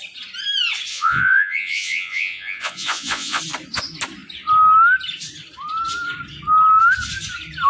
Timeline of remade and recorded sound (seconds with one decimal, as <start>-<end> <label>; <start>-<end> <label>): 0.0-0.9 recorded; 0.9-3.4 remade; 3.4-7.7 recorded